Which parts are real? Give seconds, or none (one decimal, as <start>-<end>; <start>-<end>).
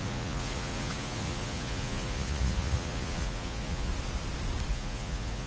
3.9-4.7